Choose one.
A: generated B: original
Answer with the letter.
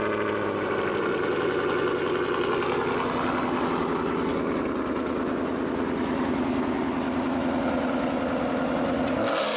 B